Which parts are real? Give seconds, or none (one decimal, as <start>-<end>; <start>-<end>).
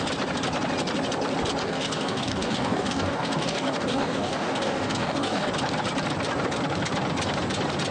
0.0-1.6; 5.5-7.9